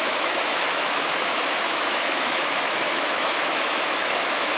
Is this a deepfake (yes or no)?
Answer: yes